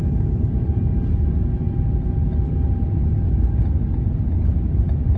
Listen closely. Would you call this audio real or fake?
real